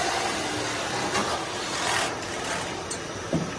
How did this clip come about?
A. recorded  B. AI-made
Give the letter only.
A